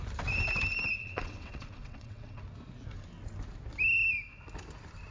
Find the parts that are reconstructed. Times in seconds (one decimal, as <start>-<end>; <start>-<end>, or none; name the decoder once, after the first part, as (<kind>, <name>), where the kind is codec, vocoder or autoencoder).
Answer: 1.0-2.4 (vocoder, WaveNeXt)